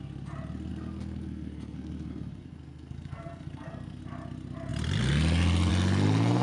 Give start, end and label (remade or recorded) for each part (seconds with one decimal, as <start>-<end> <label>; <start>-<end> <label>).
0.0-0.7 recorded; 0.7-4.0 remade; 4.0-6.4 recorded